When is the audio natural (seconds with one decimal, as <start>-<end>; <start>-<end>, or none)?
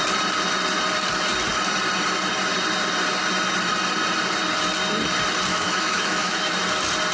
0.0-5.5; 6.6-7.1